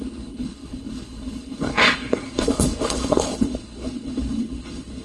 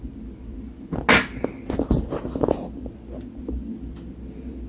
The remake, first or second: first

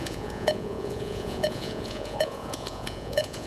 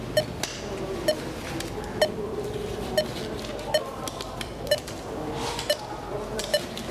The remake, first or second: first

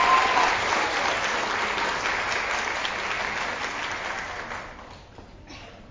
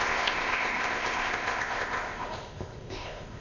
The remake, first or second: second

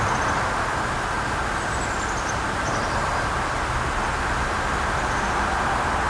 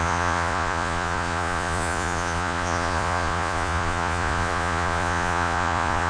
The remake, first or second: second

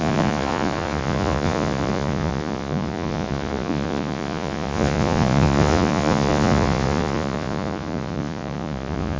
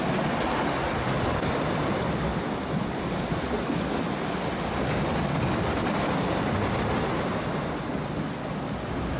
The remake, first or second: first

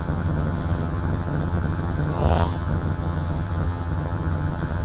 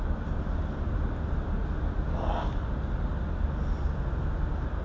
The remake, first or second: first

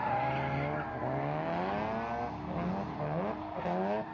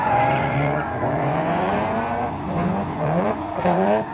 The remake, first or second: second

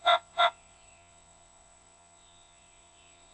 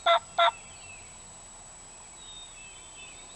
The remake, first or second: first